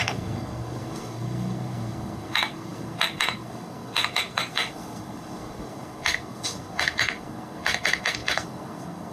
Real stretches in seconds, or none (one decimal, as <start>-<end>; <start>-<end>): none